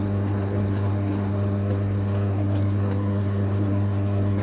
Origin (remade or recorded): remade